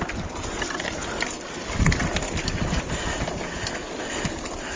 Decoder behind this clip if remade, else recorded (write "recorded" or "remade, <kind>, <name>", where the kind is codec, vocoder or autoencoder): recorded